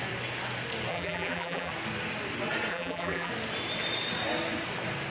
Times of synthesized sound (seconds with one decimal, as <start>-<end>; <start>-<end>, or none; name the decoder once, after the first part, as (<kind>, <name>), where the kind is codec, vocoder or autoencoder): 0.9-1.7 (vocoder, BigVGAN v2); 2.7-3.3